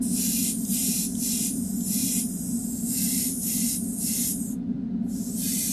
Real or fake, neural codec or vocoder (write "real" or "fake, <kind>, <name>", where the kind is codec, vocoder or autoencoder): real